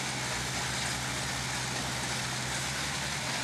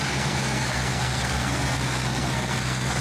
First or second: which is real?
first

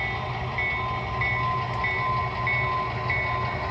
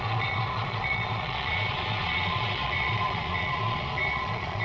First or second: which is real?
first